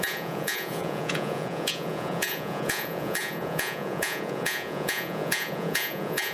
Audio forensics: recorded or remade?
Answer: remade